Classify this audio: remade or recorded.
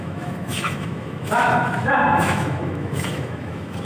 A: remade